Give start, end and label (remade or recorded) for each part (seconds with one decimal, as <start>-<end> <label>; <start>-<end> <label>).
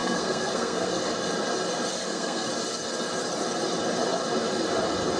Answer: 0.0-1.0 remade; 1.0-1.9 recorded; 1.9-2.5 remade; 2.5-5.2 recorded